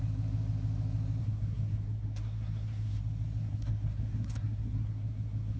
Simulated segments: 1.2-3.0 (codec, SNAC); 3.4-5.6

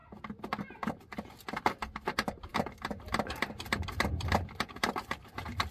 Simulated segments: none

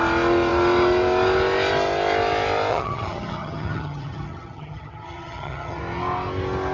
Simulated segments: 2.7-5.8 (vocoder, HiFi-GAN)

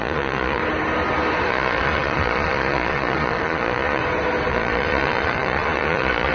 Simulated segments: 0.0-0.6 (vocoder, Vocos); 1.5-4.0; 4.5-6.3

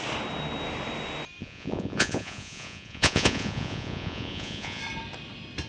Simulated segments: 1.4-4.8 (vocoder, Vocos)

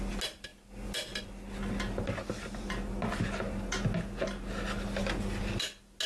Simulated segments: none

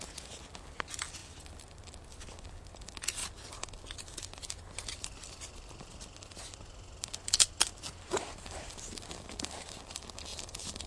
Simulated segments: 10.3-10.9 (vocoder, BigVGAN v2)